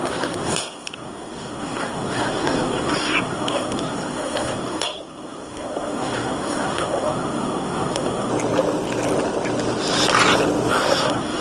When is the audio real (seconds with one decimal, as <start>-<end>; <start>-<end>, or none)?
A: 8.3-10.7